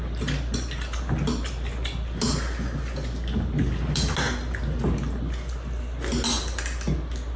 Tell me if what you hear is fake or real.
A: real